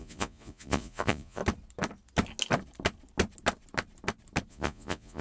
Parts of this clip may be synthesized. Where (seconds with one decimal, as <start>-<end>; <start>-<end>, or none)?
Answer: 0.0-1.4; 4.5-5.2